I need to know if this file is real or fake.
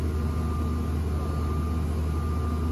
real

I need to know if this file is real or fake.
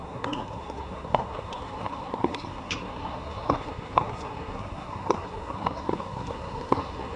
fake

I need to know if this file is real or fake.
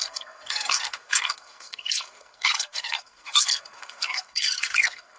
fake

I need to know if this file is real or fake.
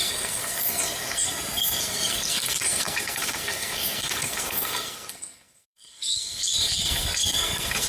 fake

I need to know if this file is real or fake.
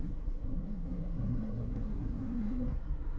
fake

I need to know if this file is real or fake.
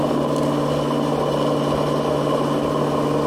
real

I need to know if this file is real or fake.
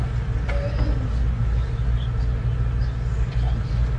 real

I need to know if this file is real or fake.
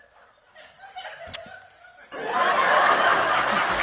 real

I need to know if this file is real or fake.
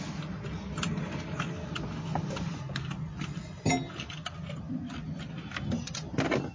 real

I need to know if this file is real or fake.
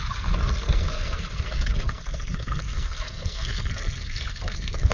fake